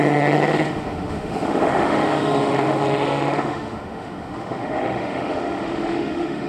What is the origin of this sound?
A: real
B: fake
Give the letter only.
B